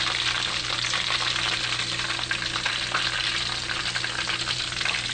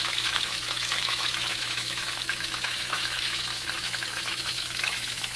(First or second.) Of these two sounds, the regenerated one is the second